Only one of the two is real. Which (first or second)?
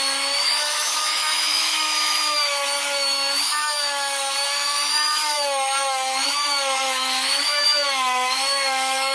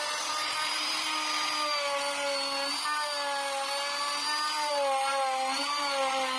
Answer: second